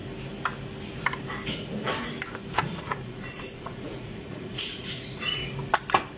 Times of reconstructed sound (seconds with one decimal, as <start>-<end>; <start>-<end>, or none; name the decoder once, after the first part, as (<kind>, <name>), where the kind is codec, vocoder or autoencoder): 2.6-5.4 (vocoder, Vocos)